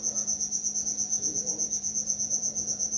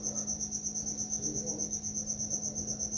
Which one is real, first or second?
second